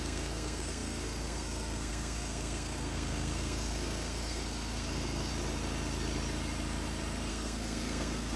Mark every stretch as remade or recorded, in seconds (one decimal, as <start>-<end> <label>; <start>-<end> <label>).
0.0-5.3 remade; 5.3-7.3 recorded; 7.3-8.4 remade